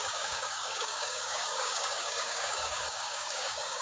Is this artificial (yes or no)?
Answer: yes